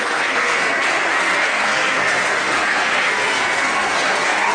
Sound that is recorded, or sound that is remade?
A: remade